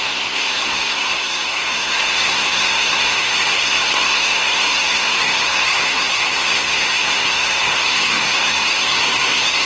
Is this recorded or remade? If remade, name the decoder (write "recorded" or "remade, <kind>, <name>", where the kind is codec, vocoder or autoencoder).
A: remade, codec, SNAC